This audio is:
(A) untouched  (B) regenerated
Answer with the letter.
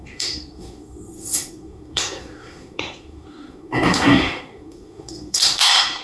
B